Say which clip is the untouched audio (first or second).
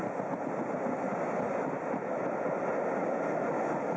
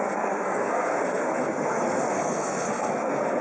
first